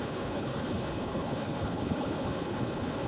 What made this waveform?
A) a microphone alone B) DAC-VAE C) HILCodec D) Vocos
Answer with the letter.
C